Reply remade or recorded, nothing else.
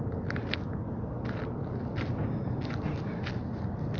recorded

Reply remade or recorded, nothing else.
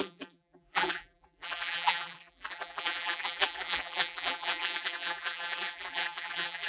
remade